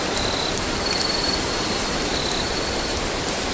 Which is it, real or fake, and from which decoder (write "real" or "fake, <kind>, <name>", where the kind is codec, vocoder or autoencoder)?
fake, vocoder, BigVGAN v2